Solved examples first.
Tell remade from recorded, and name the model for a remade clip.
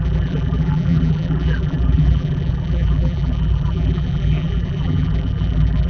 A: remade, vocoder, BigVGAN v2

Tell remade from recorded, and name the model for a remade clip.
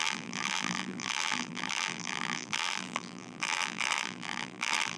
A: remade, vocoder, BigVGAN v2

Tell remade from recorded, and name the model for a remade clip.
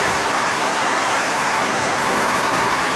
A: remade, codec, SNAC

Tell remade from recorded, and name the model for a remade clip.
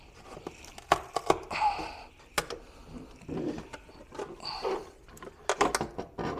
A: recorded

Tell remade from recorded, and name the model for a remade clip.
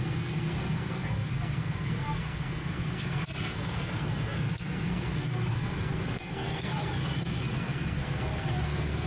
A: remade, codec, SNAC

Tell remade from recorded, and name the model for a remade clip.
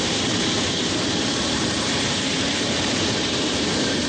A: remade, vocoder, BigVGAN v2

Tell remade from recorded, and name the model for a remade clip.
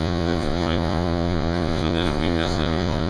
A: remade, vocoder, Vocos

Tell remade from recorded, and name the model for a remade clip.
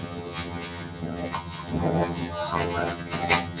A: remade, vocoder, HiFi-GAN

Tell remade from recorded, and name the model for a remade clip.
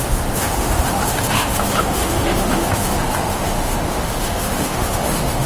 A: remade, autoencoder, DAC-VAE